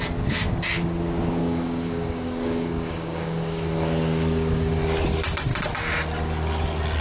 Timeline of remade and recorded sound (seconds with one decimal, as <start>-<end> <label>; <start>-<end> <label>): 0.0-1.4 recorded; 1.4-4.8 remade; 4.8-7.0 recorded